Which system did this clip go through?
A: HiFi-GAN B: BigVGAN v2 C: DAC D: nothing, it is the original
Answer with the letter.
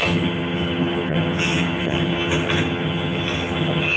A